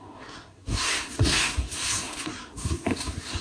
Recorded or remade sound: remade